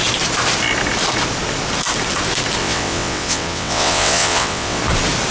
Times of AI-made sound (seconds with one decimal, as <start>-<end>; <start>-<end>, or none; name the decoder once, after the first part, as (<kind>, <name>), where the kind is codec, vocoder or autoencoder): 2.6-4.8 (vocoder, WaveNeXt)